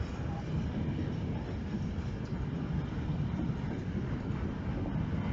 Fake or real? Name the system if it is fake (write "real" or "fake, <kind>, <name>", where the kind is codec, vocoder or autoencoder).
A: real